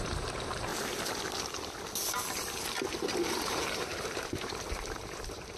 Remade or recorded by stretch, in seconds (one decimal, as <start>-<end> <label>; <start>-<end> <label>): 0.0-0.7 remade; 0.7-3.2 recorded; 3.2-5.6 remade